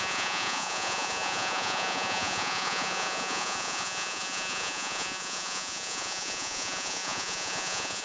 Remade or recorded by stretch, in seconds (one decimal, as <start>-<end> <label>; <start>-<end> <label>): 0.0-8.0 remade